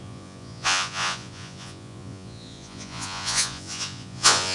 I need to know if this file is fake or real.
fake